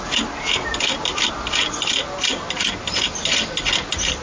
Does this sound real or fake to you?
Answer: real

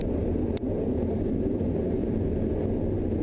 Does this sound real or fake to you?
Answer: real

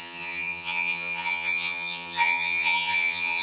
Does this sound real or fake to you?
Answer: fake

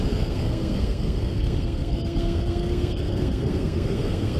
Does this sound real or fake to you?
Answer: fake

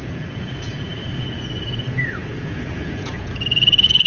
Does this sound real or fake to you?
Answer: fake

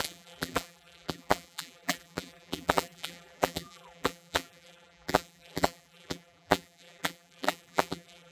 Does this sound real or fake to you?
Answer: fake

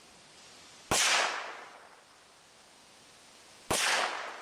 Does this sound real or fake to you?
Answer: real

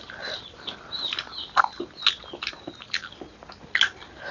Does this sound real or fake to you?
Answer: real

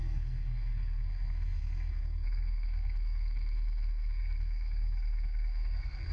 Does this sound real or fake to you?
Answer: fake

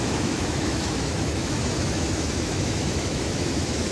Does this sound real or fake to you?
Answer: fake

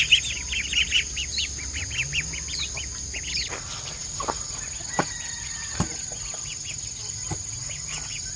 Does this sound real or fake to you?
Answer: real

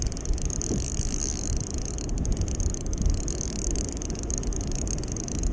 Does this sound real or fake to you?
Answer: real